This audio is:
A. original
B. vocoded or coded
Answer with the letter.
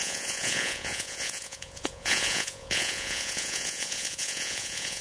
B